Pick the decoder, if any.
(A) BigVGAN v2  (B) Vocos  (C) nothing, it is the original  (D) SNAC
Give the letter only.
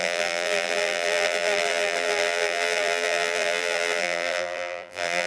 A